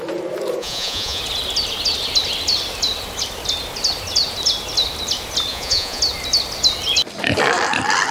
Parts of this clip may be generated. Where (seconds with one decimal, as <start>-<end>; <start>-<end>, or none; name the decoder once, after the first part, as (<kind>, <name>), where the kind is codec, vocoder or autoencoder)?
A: 0.6-1.2 (vocoder, Vocos); 5.5-6.0